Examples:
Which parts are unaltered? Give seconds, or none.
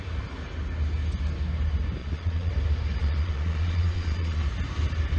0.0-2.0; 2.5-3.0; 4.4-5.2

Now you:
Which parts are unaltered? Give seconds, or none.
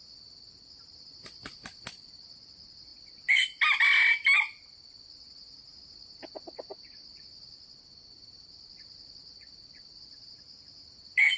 0.0-11.4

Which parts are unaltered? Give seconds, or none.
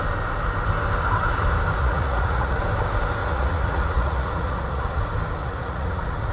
0.0-1.8; 2.6-3.2; 5.0-5.4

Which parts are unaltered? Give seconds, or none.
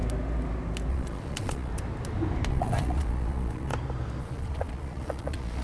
0.0-0.9; 1.7-2.5; 3.7-4.2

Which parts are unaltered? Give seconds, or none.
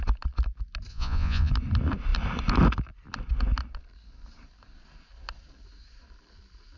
0.0-0.9; 1.5-6.8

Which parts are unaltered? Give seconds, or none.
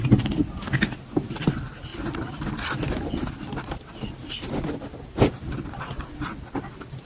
0.0-7.1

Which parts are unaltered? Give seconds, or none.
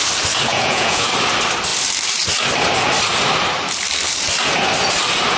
0.0-0.5; 1.1-5.4